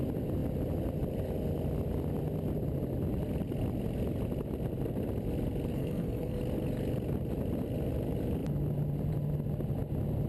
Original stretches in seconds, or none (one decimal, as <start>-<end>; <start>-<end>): 0.0-5.7; 6.4-10.3